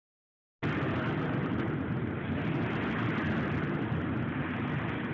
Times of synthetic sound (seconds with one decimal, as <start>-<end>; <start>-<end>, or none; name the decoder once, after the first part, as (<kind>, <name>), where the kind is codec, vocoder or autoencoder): none